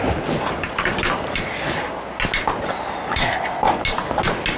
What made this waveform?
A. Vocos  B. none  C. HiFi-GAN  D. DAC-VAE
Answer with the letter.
B